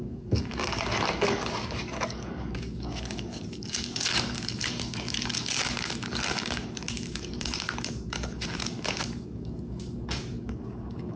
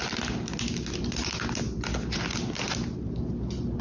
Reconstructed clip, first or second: first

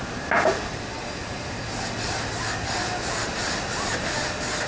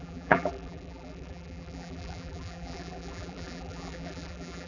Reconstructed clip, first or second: second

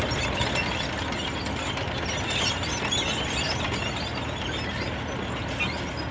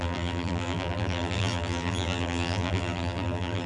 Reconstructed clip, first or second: second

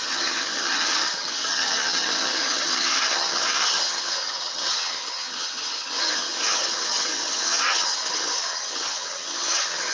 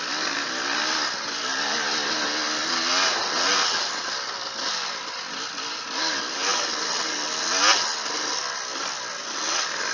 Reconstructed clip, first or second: first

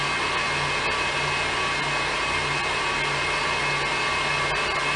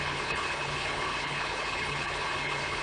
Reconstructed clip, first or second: second